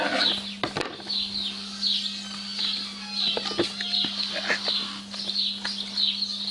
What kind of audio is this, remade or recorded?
recorded